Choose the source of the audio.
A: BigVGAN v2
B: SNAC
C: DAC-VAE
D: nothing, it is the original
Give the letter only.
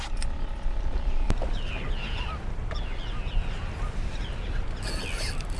D